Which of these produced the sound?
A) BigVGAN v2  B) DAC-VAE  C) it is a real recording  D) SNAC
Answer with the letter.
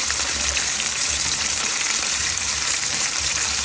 A